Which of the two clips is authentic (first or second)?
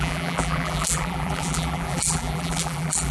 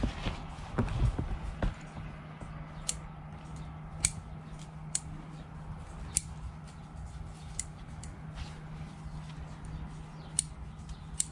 second